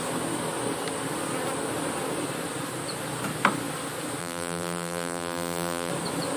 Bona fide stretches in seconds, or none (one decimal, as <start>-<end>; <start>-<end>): 0.0-4.2; 5.9-6.4